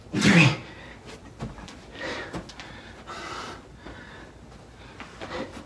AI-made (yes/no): no